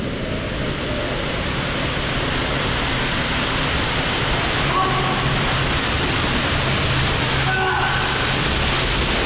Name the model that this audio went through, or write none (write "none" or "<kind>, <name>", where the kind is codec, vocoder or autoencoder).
none